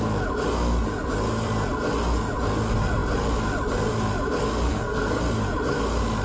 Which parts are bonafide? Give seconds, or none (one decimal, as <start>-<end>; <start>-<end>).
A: 0.0-4.7; 5.2-6.2